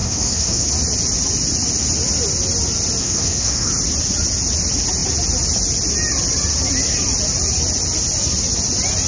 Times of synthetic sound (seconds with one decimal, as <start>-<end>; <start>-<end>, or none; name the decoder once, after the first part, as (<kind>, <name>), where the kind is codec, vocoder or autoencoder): 0.0-0.7 (codec, SNAC); 3.0-3.7